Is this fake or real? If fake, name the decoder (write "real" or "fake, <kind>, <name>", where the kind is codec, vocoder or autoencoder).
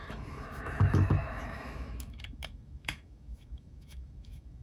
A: fake, autoencoder, DAC-VAE